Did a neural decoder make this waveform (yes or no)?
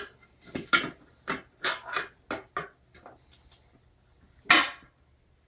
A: no